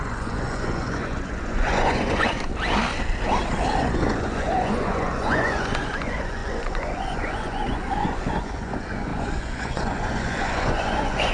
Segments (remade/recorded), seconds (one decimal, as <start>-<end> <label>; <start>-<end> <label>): 0.0-2.5 remade; 2.5-3.8 recorded; 3.8-11.3 remade